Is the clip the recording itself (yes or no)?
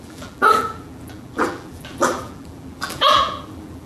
no